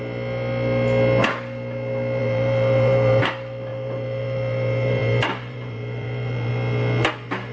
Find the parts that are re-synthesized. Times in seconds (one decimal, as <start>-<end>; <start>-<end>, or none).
2.2-3.2; 3.7-6.5

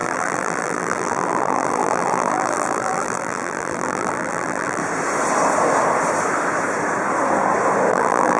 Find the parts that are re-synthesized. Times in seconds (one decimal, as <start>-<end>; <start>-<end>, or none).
0.0-4.8; 7.9-8.4

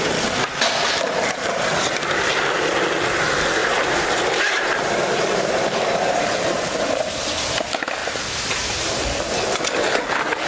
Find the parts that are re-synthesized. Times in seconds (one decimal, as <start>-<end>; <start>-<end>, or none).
3.6-7.0; 8.0-8.8